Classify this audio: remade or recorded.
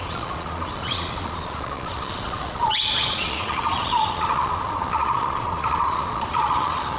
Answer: remade